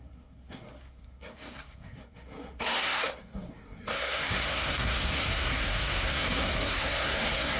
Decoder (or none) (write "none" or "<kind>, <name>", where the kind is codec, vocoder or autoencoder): codec, SNAC